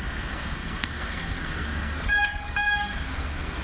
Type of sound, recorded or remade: remade